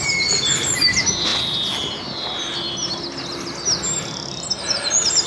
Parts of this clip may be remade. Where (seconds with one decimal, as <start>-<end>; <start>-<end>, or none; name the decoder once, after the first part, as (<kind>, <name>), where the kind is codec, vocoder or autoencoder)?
none